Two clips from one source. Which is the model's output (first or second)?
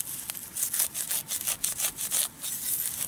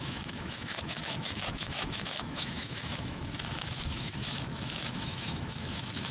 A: second